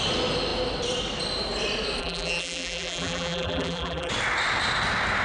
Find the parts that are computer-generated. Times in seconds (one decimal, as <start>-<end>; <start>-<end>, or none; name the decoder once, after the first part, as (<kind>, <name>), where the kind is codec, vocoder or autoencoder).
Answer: 2.0-4.1 (vocoder, BigVGAN v2)